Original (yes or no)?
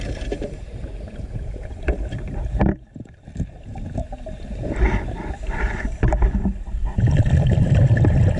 no